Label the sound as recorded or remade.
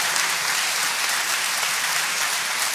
remade